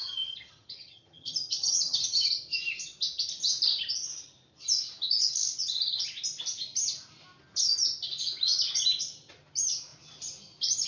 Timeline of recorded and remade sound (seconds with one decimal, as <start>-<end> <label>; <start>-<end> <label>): 0.0-2.3 remade; 2.3-10.9 recorded